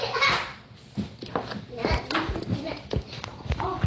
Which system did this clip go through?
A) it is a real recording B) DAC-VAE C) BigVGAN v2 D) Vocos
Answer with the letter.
A